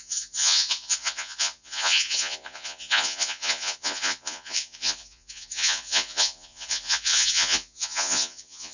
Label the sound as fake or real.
fake